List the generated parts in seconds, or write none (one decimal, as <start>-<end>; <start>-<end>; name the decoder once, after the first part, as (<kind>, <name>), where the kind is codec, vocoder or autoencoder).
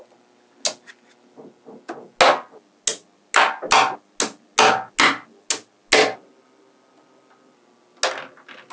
none